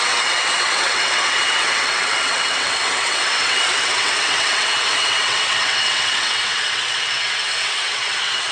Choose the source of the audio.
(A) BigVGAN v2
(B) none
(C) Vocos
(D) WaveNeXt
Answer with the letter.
D